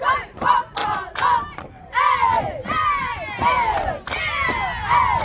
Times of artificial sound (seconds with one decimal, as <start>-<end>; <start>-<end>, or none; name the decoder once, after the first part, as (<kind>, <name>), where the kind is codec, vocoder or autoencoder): none